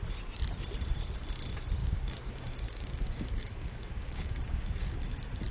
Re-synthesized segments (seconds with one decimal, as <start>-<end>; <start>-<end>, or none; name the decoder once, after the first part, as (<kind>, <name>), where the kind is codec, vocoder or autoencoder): 1.8-5.1 (codec, DAC)